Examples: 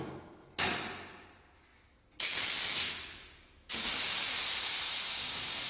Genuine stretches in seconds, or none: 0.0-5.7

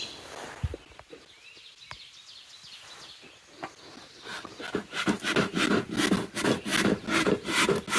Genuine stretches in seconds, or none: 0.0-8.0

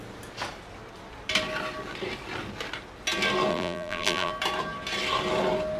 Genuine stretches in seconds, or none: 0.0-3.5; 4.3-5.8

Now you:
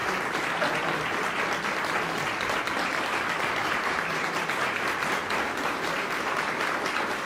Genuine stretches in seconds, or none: 0.0-3.6; 4.4-7.3

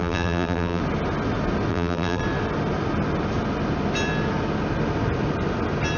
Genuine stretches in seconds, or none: 0.8-1.7; 2.2-6.0

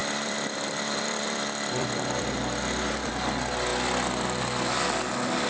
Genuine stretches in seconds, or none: 3.1-5.5

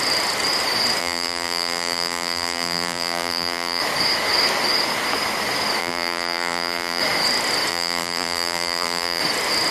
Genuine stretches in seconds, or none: 0.0-1.0; 3.8-5.8; 7.0-7.7; 9.2-9.7

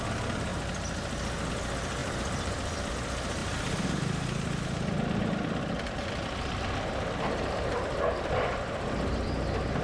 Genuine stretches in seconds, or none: 0.0-0.5; 1.5-2.0; 2.9-3.4; 8.6-9.8